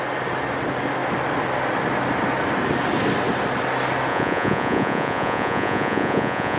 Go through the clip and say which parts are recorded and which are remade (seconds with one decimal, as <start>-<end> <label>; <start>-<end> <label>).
0.0-4.1 recorded; 4.1-6.6 remade